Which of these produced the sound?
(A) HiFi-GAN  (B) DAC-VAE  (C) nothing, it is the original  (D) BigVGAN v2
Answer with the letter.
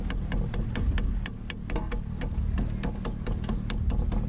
C